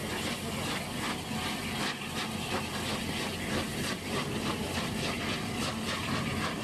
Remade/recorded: recorded